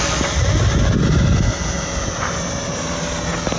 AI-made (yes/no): no